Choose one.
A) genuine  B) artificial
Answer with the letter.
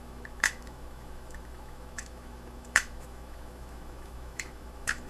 B